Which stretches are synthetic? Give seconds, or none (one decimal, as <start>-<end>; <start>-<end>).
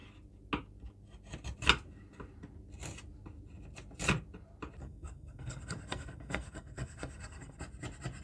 4.8-7.6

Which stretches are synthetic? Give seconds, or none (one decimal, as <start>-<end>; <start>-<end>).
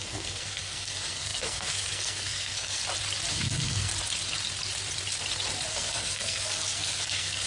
0.0-2.8; 3.3-3.9; 5.7-7.5